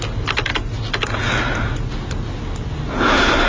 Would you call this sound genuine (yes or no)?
yes